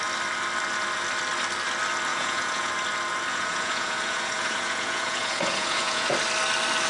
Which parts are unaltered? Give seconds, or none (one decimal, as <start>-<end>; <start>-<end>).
0.0-2.1; 2.7-3.3; 6.1-6.9